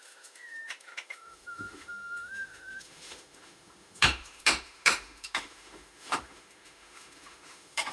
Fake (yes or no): yes